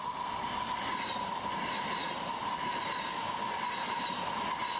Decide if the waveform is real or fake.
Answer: fake